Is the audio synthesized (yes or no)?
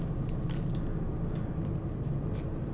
no